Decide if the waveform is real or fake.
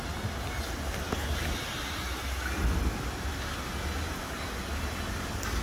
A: real